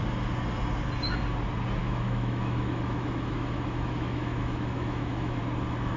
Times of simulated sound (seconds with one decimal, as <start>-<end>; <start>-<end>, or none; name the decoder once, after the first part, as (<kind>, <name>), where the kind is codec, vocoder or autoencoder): 1.8-5.4 (autoencoder, DAC-VAE)